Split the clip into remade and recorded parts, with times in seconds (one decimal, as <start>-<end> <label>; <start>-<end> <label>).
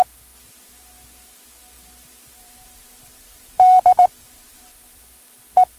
0.0-2.4 recorded; 2.4-5.0 remade; 5.0-5.8 recorded